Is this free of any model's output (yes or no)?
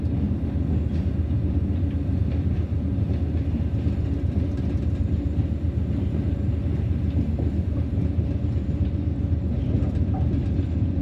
yes